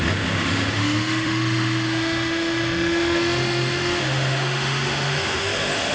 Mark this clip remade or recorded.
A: remade